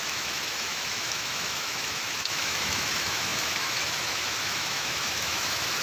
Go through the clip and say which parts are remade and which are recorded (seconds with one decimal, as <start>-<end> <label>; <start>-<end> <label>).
0.0-5.8 remade